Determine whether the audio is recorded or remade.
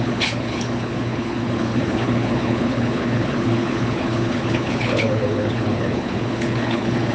remade